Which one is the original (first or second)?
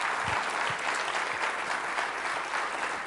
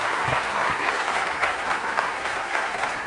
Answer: first